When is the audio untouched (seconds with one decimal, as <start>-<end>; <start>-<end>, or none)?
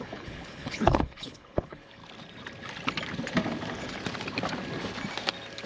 2.0-5.7